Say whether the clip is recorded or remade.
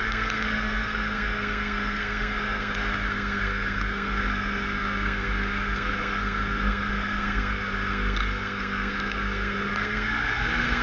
remade